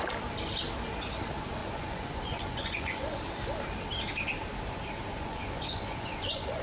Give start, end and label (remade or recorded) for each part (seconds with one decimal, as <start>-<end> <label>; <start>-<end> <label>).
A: 0.0-1.6 recorded; 1.6-3.2 remade; 3.2-5.1 recorded; 5.1-6.6 remade